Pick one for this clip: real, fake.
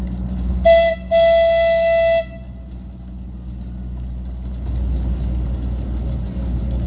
real